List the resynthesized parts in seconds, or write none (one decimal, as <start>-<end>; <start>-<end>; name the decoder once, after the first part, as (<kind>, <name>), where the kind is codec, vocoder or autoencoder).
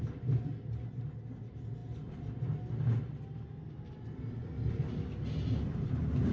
none